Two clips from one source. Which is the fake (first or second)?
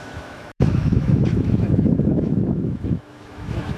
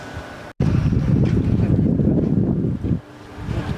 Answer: first